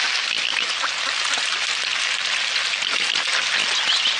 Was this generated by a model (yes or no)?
no